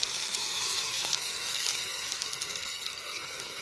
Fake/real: fake